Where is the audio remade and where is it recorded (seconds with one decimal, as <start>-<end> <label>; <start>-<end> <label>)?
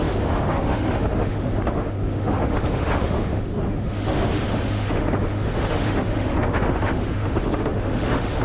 0.0-8.4 remade